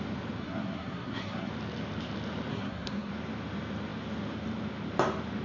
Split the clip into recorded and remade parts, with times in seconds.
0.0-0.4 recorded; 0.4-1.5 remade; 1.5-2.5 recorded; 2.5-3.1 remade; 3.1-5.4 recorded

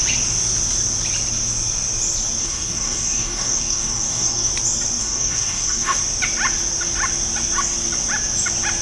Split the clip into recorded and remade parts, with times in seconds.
0.0-2.4 recorded; 2.4-4.5 remade; 4.5-5.0 recorded; 5.0-6.0 remade; 6.0-8.8 recorded

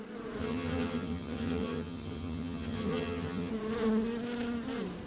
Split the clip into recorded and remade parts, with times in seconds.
0.0-0.4 recorded; 0.4-3.5 remade; 3.5-5.1 recorded

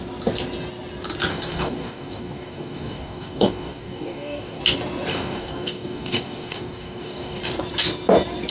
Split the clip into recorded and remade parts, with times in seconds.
0.0-1.3 recorded; 1.3-4.6 remade; 4.6-5.1 recorded; 5.1-7.4 remade; 7.4-8.5 recorded

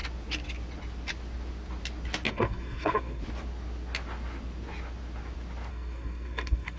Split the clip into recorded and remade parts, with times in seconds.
0.0-2.3 recorded; 2.3-3.2 remade; 3.2-5.7 recorded; 5.7-6.8 remade

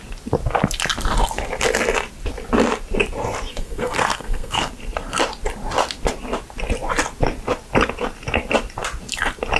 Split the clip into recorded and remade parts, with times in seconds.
0.0-3.5 recorded; 3.5-4.7 remade; 4.7-9.6 recorded